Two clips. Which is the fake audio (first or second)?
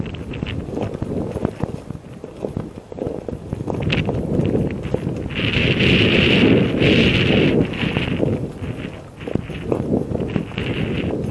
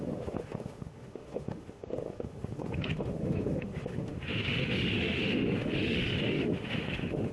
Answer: second